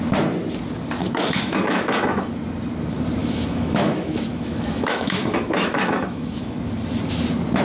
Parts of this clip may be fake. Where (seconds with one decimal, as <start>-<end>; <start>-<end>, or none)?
1.0-2.3; 3.2-6.5